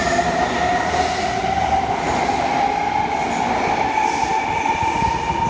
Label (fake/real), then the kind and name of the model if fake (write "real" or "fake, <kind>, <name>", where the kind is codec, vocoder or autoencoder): real